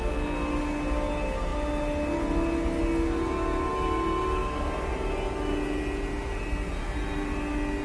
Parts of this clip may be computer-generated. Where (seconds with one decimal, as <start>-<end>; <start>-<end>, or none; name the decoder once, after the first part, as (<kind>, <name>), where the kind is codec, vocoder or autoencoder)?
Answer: none

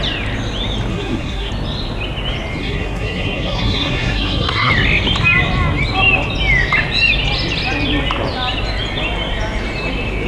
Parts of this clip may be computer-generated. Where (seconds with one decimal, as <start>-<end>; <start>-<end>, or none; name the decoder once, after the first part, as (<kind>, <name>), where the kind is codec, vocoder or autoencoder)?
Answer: 0.9-1.5 (codec, SNAC); 2.6-4.7

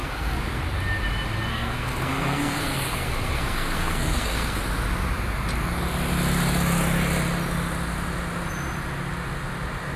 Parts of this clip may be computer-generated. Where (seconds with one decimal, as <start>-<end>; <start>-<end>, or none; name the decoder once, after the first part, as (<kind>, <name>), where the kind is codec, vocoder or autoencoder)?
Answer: 0.0-0.6 (codec, SNAC); 1.5-4.6

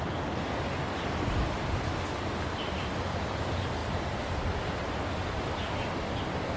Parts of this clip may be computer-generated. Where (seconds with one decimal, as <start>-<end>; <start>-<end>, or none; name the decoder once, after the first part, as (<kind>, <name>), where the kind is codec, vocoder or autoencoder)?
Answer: none